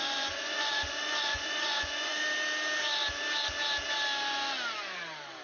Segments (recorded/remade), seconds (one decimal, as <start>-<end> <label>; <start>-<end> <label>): 0.0-2.2 remade; 2.2-5.4 recorded